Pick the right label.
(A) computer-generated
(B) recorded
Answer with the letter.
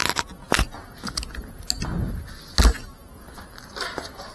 B